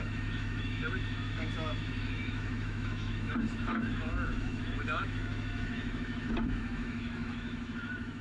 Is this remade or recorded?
remade